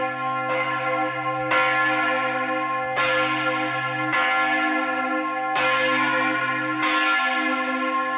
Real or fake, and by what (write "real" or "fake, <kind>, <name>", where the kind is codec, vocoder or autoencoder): real